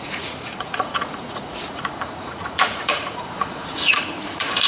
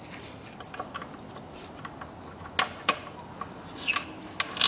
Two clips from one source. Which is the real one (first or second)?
second